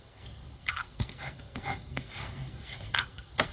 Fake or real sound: fake